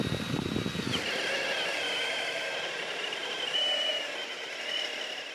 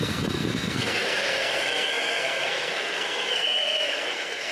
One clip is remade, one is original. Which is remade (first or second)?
second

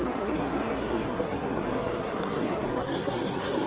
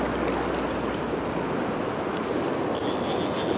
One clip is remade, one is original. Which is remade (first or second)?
first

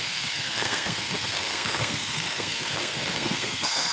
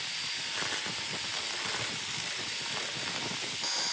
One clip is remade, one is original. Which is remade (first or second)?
first